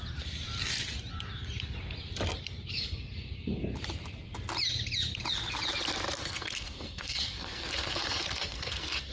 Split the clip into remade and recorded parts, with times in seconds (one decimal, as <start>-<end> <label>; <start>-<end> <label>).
0.0-6.2 recorded; 6.2-9.1 remade